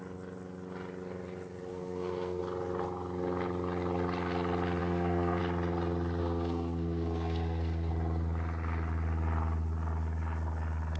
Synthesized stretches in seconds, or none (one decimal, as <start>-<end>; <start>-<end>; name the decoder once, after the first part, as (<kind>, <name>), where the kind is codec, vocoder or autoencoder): 1.7-2.4 (codec, SNAC); 4.8-5.4; 6.2-7.9